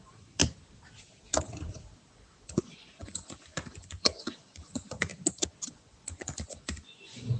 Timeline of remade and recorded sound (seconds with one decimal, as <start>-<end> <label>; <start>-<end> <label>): 0.0-0.4 remade; 0.4-2.1 recorded; 2.1-5.1 remade; 5.1-5.7 recorded; 5.7-7.4 remade